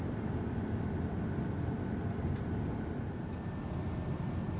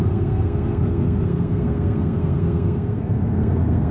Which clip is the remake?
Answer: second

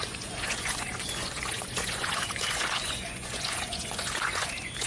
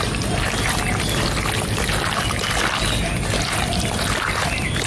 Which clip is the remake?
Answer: first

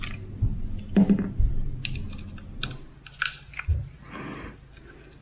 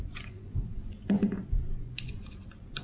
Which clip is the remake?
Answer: second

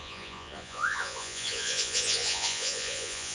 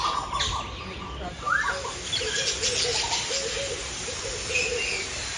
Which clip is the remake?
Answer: first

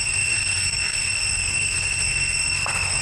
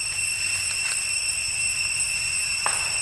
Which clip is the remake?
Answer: first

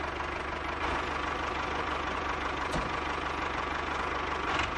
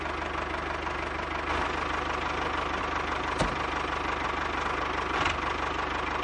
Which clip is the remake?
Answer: first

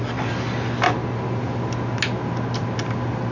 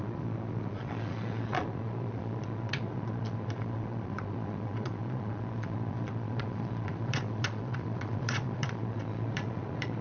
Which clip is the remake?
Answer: second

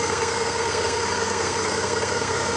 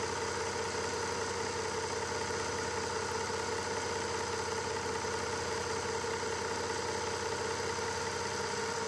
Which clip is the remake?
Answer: first